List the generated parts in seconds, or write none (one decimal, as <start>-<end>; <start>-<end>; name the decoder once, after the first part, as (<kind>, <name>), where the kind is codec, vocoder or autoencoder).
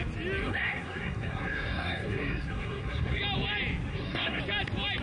0.4-3.2 (codec, SNAC); 3.9-4.4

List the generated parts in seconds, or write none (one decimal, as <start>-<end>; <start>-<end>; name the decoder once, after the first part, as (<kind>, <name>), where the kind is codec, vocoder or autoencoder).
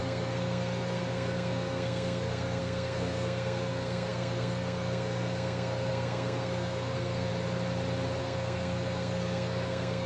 0.0-7.3 (codec, SNAC); 8.2-10.1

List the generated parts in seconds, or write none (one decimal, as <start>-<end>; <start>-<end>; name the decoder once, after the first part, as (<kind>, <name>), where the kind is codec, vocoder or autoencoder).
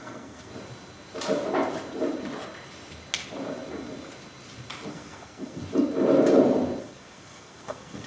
0.0-0.5 (codec, SNAC); 4.9-5.6; 6.8-8.1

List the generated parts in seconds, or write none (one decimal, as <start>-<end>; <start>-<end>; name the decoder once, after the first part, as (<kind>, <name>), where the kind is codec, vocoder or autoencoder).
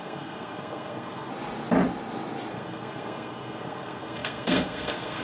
0.0-1.3 (codec, SNAC); 2.5-5.2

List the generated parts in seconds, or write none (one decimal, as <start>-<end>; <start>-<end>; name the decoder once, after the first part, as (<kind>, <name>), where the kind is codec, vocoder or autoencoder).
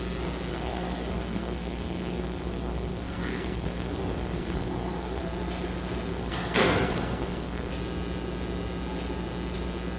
0.5-5.2 (codec, SNAC); 6.1-7.7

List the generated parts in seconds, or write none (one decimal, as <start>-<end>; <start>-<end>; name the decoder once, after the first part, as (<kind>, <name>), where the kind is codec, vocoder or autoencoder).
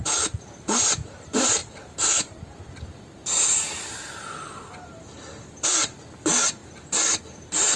none